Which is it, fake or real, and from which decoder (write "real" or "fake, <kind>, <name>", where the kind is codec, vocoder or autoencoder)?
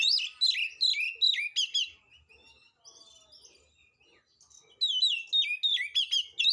real